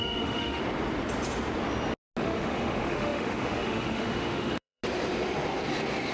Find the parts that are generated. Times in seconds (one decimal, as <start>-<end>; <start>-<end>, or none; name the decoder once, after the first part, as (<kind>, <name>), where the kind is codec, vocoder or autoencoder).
0.0-0.6 (autoencoder, DAC-VAE); 2.2-4.8

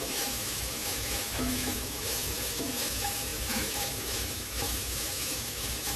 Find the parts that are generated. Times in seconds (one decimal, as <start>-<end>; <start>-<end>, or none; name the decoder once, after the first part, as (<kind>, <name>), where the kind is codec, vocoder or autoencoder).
0.0-6.0 (autoencoder, DAC-VAE)

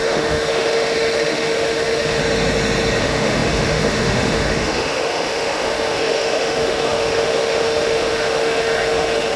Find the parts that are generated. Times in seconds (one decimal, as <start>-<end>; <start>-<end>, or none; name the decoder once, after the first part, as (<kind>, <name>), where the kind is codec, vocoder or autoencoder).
0.0-2.2 (autoencoder, DAC-VAE); 3.0-9.4

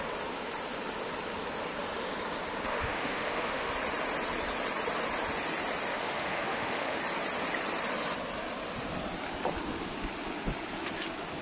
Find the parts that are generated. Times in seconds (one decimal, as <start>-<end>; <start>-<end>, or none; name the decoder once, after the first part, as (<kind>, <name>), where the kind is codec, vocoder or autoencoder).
2.7-3.7 (autoencoder, DAC-VAE); 5.9-7.0

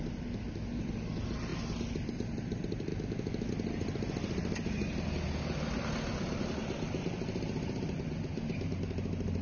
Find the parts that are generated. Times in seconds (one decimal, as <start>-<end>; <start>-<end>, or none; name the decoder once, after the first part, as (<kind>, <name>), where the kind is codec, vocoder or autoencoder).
2.9-3.5 (autoencoder, DAC-VAE)

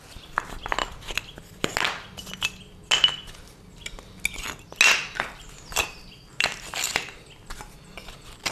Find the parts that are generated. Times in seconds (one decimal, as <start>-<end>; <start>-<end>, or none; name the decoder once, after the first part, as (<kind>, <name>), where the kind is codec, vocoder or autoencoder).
none

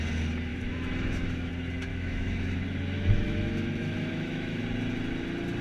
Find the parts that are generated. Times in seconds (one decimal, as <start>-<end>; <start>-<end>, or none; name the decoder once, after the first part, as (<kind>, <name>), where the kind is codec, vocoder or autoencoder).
0.5-1.5 (autoencoder, DAC-VAE); 1.9-4.6